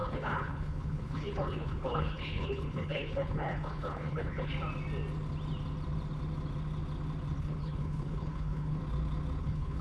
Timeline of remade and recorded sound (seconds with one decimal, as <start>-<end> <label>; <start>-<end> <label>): 0.0-4.5 remade; 4.5-7.4 recorded; 7.4-8.8 remade; 8.8-9.4 recorded; 9.4-9.8 remade